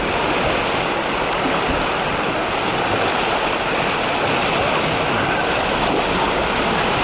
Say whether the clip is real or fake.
real